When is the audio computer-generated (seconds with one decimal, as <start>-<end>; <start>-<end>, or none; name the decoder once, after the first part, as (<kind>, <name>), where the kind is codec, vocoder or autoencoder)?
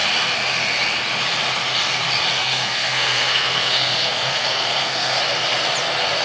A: 2.4-5.2 (codec, SNAC)